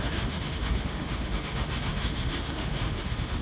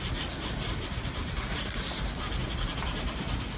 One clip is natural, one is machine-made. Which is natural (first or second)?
second